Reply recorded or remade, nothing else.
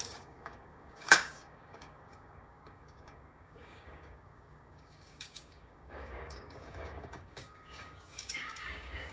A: remade